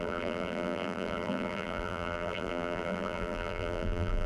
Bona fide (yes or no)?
no